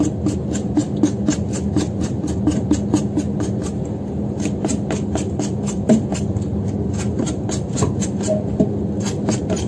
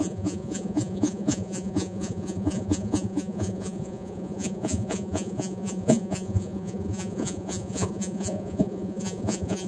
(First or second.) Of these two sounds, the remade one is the second